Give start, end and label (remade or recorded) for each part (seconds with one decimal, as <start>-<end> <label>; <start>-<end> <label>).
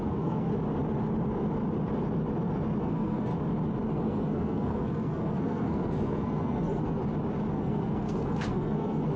0.0-0.5 remade; 0.5-2.8 recorded; 2.8-3.3 remade; 3.3-3.9 recorded; 3.9-7.0 remade; 7.0-7.5 recorded; 7.5-9.2 remade